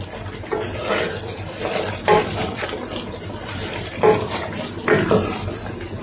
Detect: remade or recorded recorded